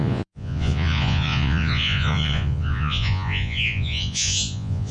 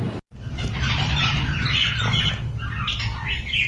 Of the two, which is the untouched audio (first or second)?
second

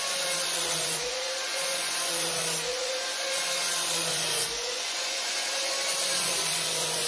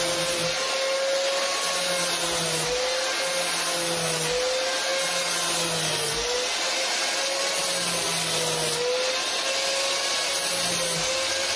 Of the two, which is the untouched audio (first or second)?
second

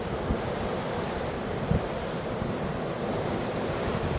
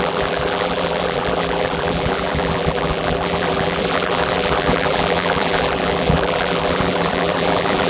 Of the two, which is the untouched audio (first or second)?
first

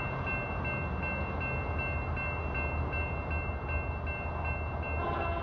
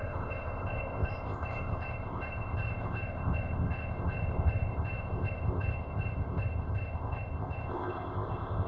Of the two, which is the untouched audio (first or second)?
first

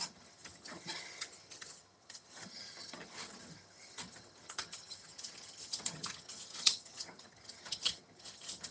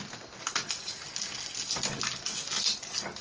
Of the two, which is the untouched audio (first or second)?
second